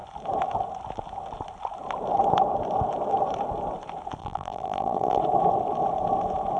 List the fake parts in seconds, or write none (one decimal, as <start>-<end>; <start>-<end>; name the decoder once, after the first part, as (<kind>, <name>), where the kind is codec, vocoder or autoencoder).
4.2-5.2 (vocoder, BigVGAN v2)